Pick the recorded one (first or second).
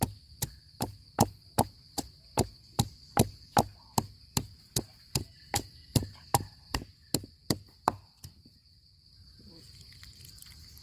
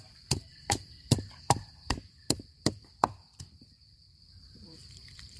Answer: first